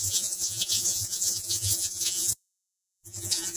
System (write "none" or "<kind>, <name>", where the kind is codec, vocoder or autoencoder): vocoder, Vocos